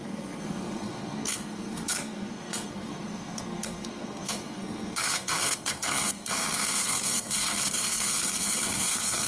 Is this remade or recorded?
remade